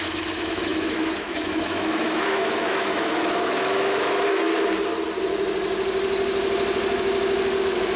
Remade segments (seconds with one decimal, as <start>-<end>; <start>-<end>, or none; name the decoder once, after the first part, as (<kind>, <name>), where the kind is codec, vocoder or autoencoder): 0.0-4.5 (autoencoder, DAC-VAE); 7.6-8.0